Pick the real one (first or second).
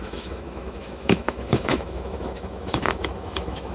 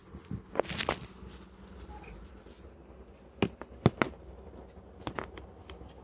second